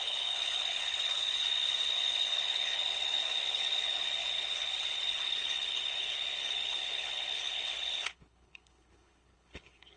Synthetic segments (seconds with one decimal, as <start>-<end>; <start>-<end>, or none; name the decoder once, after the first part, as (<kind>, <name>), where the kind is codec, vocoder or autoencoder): 0.0-10.0 (codec, HILCodec)